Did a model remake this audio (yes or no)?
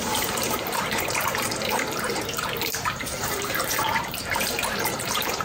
yes